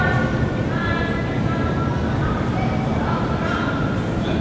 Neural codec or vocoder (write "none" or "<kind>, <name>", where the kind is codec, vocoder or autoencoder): none